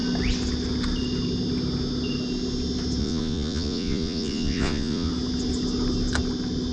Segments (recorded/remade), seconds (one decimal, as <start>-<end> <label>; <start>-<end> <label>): 0.0-3.0 recorded; 3.0-5.1 remade; 5.1-6.7 recorded